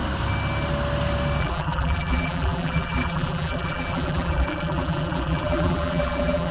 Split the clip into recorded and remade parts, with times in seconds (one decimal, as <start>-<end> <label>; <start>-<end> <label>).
0.0-1.4 recorded; 1.4-6.5 remade